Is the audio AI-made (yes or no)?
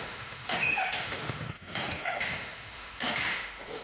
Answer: yes